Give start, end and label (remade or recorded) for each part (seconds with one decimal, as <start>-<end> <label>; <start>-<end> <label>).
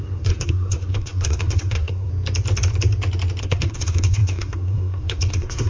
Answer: 0.0-2.1 remade; 2.1-3.4 recorded; 3.4-5.7 remade